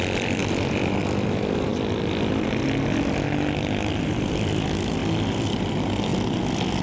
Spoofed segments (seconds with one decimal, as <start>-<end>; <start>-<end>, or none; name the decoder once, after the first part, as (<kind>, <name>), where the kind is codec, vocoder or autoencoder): 0.0-1.7 (vocoder, BigVGAN v2); 4.0-5.0; 5.5-6.1